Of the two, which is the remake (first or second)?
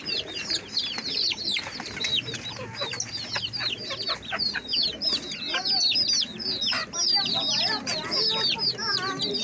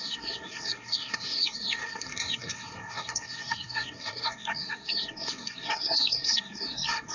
second